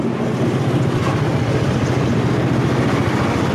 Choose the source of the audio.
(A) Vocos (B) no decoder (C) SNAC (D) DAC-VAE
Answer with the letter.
B